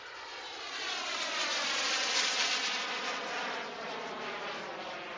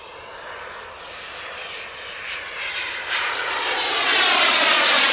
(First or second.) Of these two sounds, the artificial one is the second